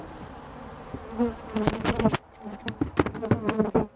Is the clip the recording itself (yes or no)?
no